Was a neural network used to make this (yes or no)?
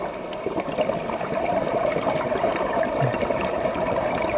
no